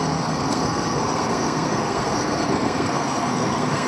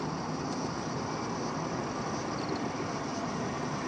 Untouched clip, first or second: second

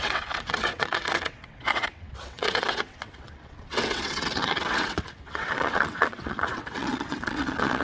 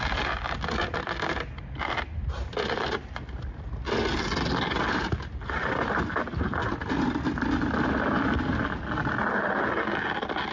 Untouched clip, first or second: second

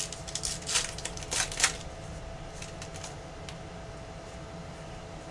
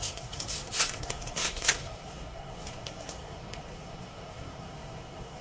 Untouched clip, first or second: first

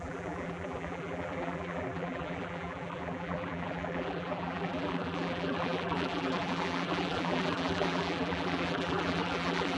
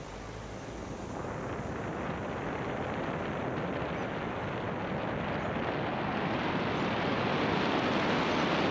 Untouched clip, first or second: second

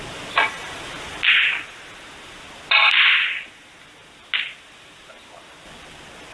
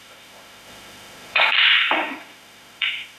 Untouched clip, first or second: first